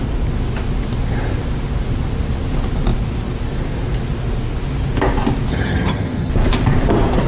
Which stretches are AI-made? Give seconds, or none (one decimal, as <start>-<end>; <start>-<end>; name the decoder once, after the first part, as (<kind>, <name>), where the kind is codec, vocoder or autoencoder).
5.5-6.3 (vocoder, HiFi-GAN)